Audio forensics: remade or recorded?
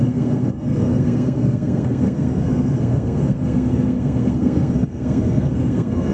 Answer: remade